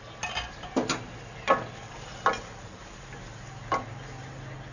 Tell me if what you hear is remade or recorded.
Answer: recorded